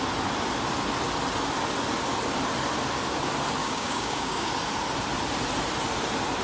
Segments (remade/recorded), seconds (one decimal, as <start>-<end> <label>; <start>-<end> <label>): 0.0-3.6 recorded; 3.6-4.5 remade; 4.5-6.4 recorded